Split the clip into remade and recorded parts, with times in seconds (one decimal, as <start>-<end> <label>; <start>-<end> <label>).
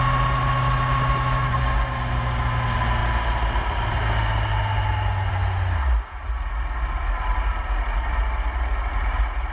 0.0-9.5 recorded